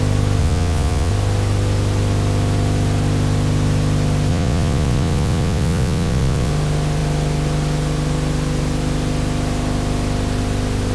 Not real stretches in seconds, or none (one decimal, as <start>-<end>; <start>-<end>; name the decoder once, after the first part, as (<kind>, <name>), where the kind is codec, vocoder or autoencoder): 0.4-1.1 (vocoder, Vocos); 4.3-6.5